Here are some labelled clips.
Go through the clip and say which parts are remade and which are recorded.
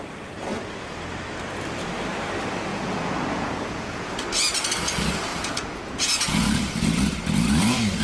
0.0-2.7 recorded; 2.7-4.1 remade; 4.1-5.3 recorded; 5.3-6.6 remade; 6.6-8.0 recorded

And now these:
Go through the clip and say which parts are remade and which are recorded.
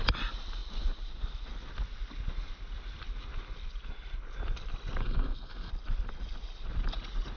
0.0-5.0 recorded; 5.0-5.7 remade; 5.7-7.4 recorded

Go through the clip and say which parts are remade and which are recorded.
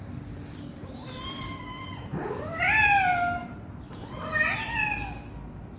0.0-0.7 recorded; 0.7-1.6 remade; 1.6-3.4 recorded; 3.4-4.0 remade; 4.0-5.8 recorded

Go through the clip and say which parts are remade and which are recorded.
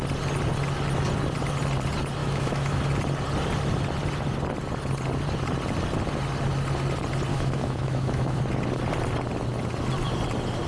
0.0-2.2 recorded; 2.2-2.8 remade; 2.8-7.3 recorded; 7.3-8.4 remade; 8.4-10.7 recorded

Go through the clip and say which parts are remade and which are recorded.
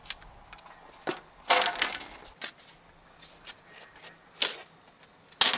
0.0-5.6 recorded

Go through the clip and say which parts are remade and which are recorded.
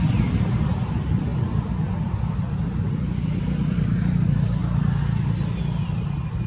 0.0-1.3 remade; 1.3-2.6 recorded; 2.6-6.5 remade